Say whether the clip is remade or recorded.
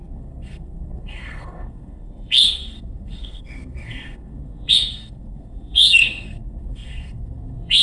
remade